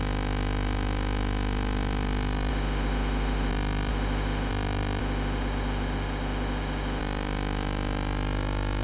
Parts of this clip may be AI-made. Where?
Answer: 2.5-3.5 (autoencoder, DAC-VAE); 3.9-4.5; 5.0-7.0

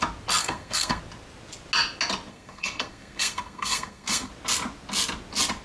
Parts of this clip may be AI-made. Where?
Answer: 0.4-1.0 (codec, SNAC); 2.3-4.3

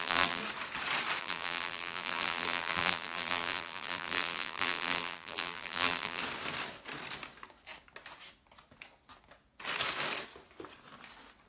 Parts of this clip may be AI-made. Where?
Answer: 0.0-0.4 (vocoder, BigVGAN v2); 1.2-6.2

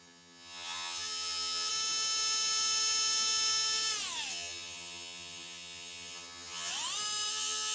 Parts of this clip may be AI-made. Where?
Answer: 0.0-1.7 (vocoder, HiFi-GAN); 4.3-6.7; 7.3-7.7

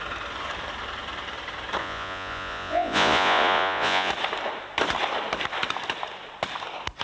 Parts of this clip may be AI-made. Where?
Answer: 1.8-4.1 (vocoder, Vocos)

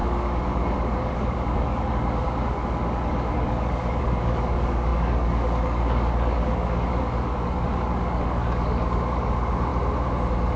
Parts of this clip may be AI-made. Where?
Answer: 0.0-9.7 (codec, DAC)